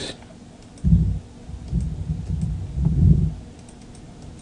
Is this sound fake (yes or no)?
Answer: no